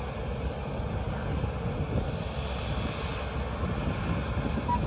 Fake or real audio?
real